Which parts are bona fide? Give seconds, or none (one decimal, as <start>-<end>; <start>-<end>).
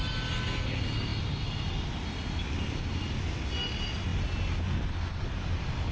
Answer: 0.0-5.9